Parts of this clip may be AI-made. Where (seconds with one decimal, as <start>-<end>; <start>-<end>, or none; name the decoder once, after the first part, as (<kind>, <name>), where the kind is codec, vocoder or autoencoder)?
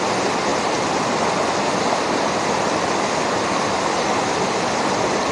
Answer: 0.5-3.7 (vocoder, BigVGAN v2)